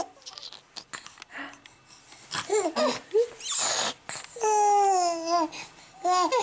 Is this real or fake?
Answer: real